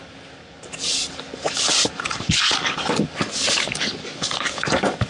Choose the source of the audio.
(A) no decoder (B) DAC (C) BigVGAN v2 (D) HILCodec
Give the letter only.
B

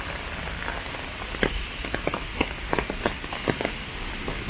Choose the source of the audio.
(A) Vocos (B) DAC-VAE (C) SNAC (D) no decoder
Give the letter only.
D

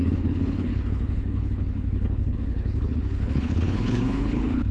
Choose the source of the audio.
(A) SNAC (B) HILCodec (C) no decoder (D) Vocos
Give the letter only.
B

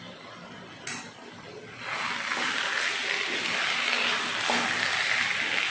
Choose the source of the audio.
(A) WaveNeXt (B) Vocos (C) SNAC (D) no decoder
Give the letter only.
D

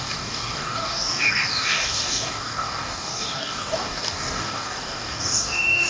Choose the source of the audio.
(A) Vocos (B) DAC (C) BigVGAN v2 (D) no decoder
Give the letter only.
B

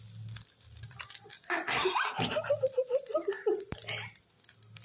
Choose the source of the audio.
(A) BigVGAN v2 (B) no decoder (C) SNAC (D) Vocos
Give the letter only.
A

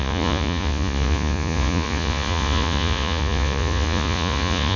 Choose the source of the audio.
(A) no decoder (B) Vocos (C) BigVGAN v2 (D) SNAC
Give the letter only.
B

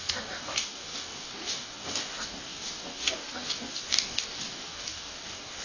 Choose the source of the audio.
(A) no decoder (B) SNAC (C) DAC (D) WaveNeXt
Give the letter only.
C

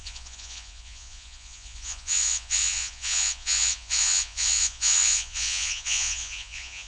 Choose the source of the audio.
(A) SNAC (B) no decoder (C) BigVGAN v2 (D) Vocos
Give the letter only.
D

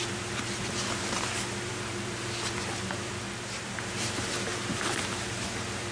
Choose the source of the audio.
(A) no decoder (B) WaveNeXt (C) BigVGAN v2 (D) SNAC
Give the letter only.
C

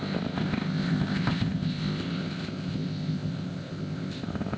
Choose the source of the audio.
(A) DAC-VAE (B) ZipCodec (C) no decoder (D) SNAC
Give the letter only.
B